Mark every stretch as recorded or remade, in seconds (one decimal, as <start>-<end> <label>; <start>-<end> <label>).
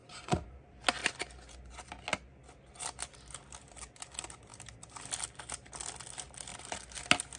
0.0-0.5 remade; 0.5-7.4 recorded